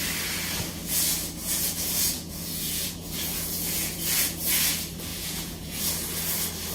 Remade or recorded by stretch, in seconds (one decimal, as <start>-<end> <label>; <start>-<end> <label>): 0.0-1.4 recorded; 1.4-4.5 remade; 4.5-5.1 recorded; 5.1-5.8 remade; 5.8-6.7 recorded